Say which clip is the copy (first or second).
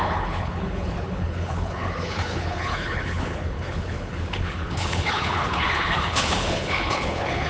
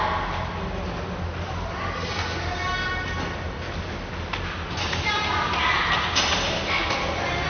first